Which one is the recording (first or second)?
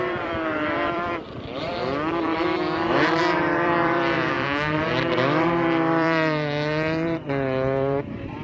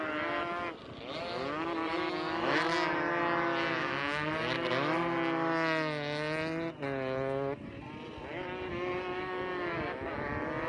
second